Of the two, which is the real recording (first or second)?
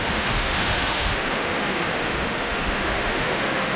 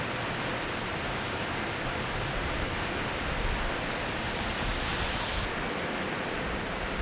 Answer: second